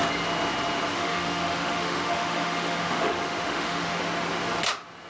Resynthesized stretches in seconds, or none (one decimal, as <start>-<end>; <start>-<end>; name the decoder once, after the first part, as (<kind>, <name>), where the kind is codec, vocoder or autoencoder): 0.9-4.0 (autoencoder, DAC-VAE)